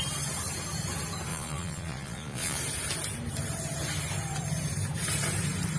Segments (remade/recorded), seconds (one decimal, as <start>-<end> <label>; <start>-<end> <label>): 0.0-1.3 recorded; 1.3-2.6 remade; 2.6-5.8 recorded